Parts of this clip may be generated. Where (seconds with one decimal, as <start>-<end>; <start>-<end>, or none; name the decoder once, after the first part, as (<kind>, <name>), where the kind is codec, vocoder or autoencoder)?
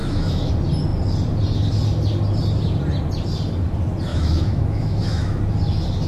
0.0-0.5 (autoencoder, DAC-VAE); 4.1-5.4